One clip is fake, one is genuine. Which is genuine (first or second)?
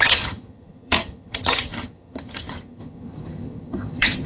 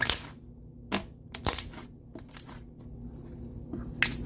second